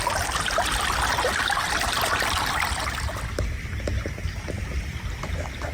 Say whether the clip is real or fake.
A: real